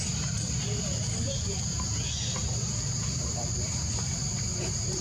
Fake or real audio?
real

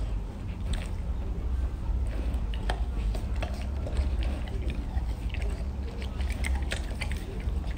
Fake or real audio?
real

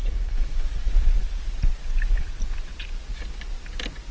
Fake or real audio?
real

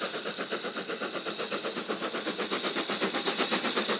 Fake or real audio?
real